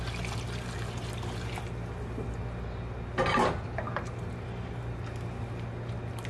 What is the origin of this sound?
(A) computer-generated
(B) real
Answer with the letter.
B